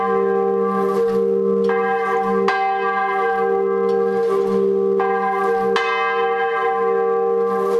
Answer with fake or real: real